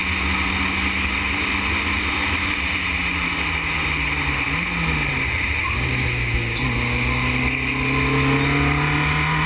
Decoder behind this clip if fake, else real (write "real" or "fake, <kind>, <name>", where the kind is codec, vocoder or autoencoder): real